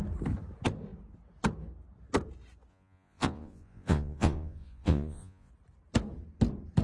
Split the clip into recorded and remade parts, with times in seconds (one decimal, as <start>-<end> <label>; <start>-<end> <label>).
0.0-2.7 recorded; 2.7-5.5 remade; 5.5-6.8 recorded